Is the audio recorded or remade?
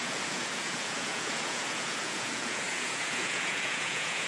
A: remade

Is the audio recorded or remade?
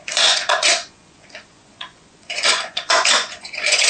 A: remade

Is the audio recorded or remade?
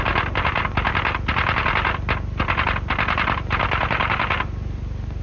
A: recorded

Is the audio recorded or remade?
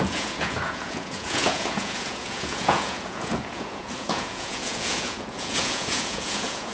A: remade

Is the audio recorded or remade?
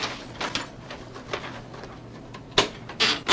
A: recorded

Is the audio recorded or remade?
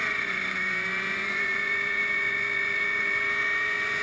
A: remade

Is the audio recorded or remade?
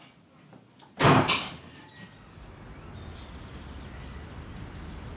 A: recorded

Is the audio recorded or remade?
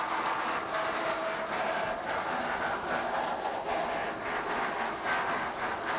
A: recorded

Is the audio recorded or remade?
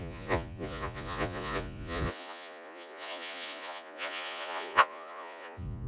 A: remade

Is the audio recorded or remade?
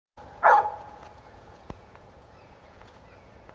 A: remade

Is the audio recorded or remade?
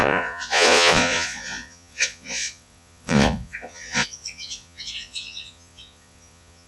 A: remade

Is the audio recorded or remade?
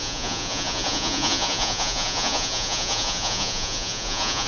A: remade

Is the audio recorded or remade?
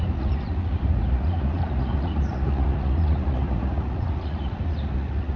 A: remade